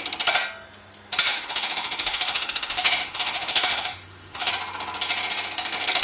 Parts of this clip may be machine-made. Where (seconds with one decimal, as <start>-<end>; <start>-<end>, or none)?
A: 1.3-4.5